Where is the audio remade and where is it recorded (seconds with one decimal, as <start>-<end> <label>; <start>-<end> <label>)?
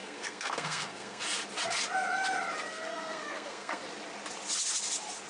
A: 0.0-1.2 remade; 1.2-2.7 recorded; 2.7-3.8 remade; 3.8-5.3 recorded